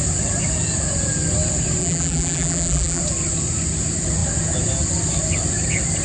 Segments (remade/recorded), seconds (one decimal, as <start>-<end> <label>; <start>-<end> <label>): 0.0-1.8 recorded; 1.8-3.0 remade; 3.0-6.0 recorded